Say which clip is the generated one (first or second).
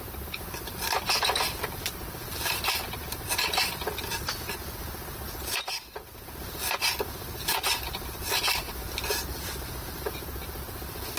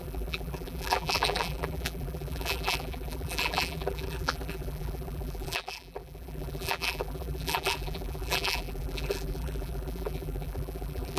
second